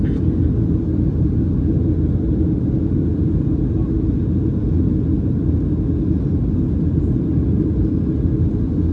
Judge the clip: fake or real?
real